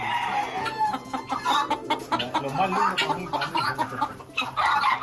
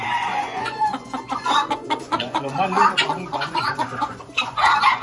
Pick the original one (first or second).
first